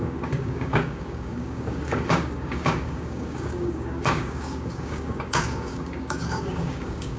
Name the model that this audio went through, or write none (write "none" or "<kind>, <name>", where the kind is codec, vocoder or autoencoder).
codec, DAC